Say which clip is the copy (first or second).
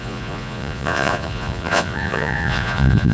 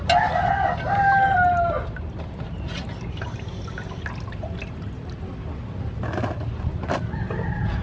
first